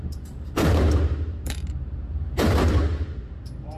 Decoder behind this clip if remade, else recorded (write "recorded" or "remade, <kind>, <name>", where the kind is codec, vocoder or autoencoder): remade, vocoder, BigVGAN v2